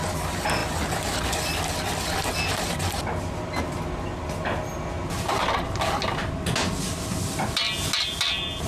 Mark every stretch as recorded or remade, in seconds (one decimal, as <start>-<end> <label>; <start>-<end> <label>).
0.0-8.7 recorded